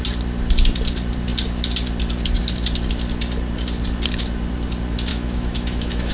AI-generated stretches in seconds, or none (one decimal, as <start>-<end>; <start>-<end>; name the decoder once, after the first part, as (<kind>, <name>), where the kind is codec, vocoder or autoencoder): 5.1-6.1 (autoencoder, DAC-VAE)

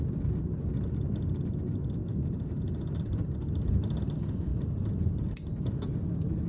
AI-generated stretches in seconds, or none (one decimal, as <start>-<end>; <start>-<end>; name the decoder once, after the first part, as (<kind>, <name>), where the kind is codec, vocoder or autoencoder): 2.0-3.3 (vocoder, BigVGAN v2); 4.5-5.5

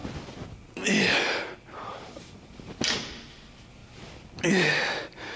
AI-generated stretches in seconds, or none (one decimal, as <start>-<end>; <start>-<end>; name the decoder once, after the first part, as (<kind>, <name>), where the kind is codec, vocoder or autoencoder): none

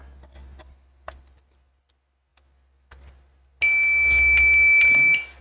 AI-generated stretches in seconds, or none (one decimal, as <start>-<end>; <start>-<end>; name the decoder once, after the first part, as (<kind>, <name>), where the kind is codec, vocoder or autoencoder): none

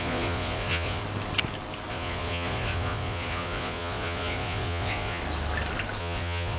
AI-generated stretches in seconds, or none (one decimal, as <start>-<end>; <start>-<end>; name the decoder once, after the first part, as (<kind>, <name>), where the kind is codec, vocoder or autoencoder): 0.0-1.0 (vocoder, Vocos); 1.9-5.2; 6.0-6.6